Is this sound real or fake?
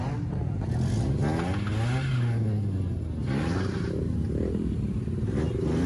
real